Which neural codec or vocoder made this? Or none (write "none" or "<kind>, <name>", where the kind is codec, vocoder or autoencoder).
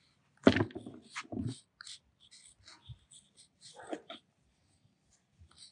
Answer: none